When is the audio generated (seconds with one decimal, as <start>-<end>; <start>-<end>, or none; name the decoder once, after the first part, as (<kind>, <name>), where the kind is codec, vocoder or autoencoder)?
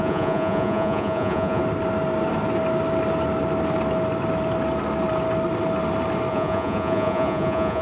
0.0-1.6 (vocoder, Vocos); 6.3-7.8